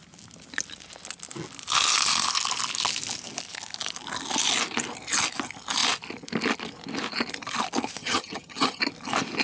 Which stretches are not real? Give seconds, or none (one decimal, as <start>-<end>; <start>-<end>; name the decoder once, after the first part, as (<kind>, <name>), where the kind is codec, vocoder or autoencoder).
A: 8.0-8.8 (vocoder, HiFi-GAN)